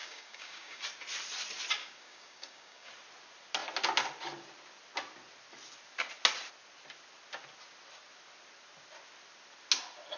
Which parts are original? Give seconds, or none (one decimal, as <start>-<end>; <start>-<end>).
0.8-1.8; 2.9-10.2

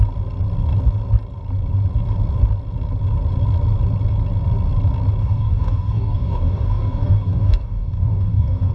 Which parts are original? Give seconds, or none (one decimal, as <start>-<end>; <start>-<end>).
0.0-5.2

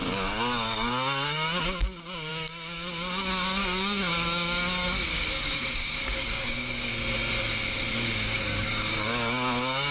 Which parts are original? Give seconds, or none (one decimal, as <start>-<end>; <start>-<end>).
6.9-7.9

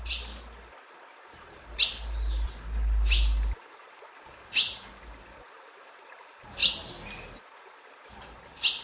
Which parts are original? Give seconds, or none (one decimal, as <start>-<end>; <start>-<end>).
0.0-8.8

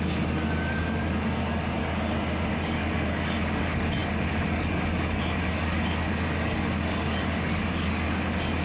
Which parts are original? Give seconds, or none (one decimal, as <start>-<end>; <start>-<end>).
1.8-2.5

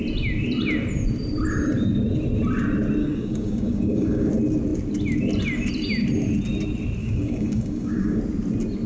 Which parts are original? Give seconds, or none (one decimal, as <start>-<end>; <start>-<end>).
0.0-3.0; 4.3-7.0; 8.2-8.9

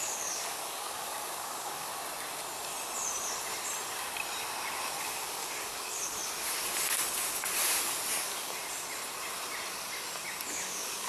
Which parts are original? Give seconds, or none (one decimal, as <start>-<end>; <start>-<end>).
1.9-5.0; 6.2-8.2; 8.6-10.5